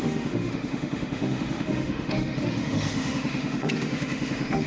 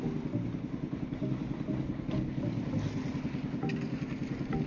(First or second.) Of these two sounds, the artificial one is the first